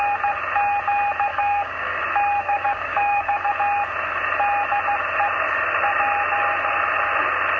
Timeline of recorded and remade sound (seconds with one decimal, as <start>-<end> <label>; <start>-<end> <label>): 0.0-1.3 recorded; 1.3-2.0 remade; 2.0-2.4 recorded; 2.4-3.5 remade; 3.5-7.6 recorded